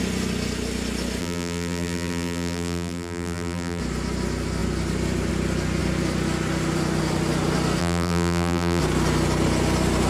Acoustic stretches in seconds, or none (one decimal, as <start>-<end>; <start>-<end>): 0.0-1.2; 3.8-7.8; 8.8-10.1